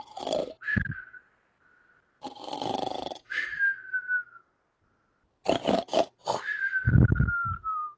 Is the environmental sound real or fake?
real